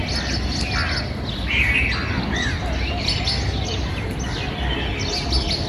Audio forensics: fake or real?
real